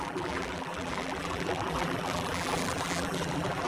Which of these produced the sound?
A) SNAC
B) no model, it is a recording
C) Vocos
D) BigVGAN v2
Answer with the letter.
D